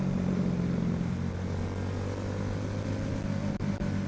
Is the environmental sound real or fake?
real